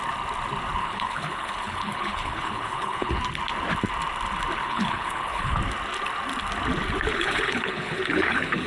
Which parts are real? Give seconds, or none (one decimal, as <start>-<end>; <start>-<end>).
0.0-0.8; 3.2-4.6; 5.6-7.1